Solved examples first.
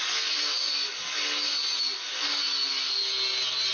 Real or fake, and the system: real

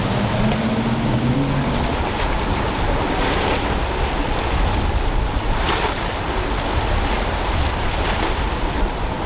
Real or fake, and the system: real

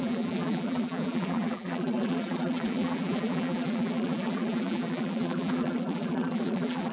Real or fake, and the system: fake, vocoder, BigVGAN v2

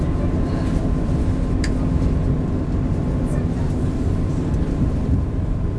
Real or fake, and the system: real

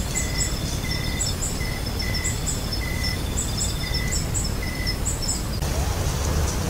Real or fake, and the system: fake, vocoder, BigVGAN v2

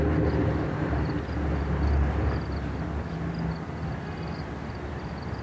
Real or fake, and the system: real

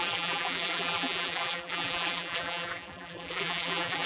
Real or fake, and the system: fake, vocoder, BigVGAN v2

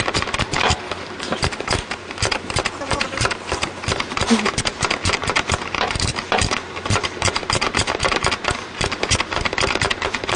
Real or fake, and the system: fake, vocoder, BigVGAN v2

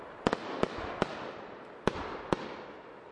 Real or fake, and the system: real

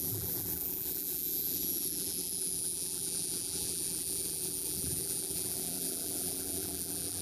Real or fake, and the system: fake, vocoder, BigVGAN v2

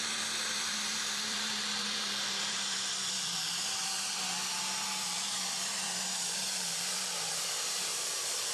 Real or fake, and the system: fake, vocoder, BigVGAN v2